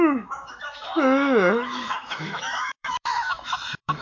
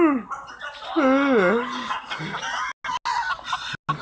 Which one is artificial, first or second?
first